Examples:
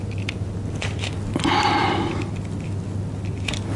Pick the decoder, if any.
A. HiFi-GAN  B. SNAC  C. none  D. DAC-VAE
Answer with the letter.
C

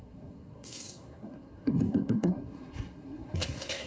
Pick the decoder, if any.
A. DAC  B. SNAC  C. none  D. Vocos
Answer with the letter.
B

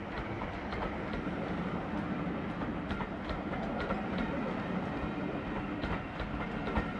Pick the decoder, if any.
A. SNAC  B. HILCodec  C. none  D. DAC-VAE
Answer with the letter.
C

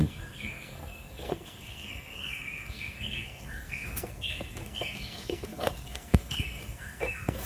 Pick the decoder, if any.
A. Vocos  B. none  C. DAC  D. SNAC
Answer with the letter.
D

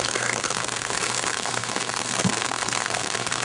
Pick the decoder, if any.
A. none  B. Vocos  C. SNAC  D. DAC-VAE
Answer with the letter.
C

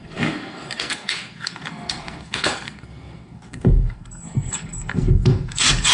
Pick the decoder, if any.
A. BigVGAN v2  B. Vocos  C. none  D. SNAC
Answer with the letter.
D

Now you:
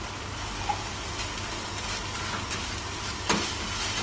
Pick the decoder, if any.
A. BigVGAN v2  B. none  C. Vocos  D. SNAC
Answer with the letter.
B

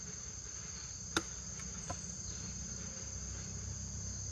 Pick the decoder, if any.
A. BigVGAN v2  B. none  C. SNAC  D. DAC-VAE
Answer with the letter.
B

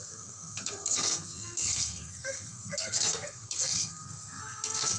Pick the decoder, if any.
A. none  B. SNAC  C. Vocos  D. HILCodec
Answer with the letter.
B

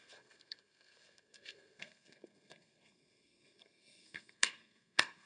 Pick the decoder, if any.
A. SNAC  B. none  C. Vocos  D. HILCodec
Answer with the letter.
A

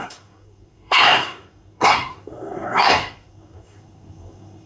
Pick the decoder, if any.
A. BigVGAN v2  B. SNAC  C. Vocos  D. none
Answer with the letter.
B